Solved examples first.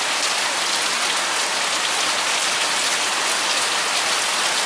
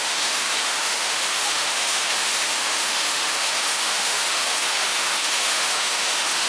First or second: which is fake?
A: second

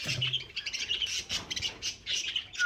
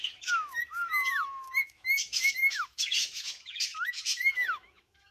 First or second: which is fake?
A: second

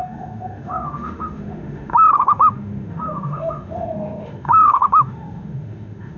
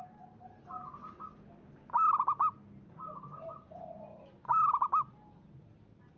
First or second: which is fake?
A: first